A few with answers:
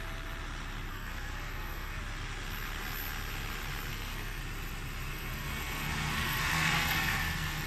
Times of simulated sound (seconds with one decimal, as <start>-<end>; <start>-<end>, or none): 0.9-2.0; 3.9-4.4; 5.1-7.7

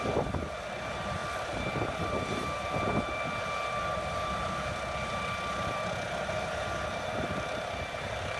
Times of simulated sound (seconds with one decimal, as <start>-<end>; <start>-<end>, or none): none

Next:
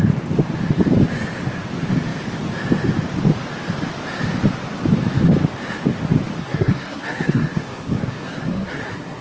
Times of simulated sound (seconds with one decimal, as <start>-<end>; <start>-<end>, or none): 6.4-9.2